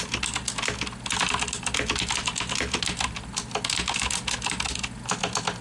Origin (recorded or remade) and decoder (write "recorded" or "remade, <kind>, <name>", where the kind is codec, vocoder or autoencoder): recorded